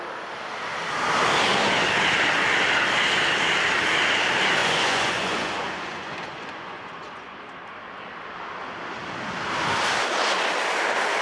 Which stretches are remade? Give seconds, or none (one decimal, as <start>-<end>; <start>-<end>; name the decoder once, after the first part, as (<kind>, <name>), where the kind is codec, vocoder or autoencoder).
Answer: 4.6-7.4 (vocoder, Vocos)